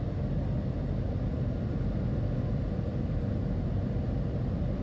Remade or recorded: recorded